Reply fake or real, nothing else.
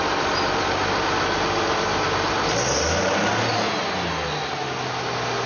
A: real